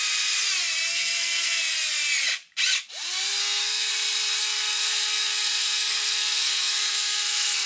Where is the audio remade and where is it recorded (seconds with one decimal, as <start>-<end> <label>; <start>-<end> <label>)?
0.0-0.9 recorded; 0.9-1.6 remade; 1.6-3.4 recorded; 3.4-3.9 remade; 3.9-4.4 recorded; 4.4-7.7 remade